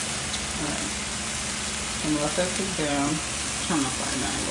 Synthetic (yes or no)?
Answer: no